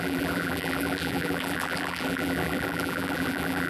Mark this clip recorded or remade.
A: remade